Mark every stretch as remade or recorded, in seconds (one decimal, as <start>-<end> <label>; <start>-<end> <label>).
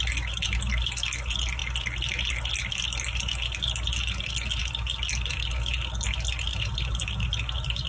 0.0-7.9 recorded